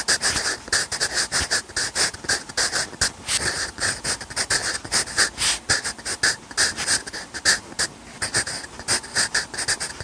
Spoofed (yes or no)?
no